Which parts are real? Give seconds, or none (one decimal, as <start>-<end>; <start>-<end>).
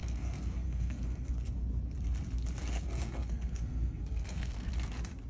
1.5-2.6; 4.7-5.3